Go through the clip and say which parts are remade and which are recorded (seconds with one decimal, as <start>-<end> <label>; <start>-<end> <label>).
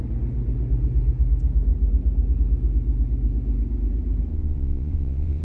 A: 0.0-4.3 recorded; 4.3-5.4 remade